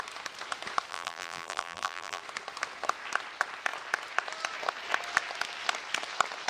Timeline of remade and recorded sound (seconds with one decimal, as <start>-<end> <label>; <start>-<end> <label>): 0.0-0.9 recorded; 0.9-2.2 remade; 2.2-6.5 recorded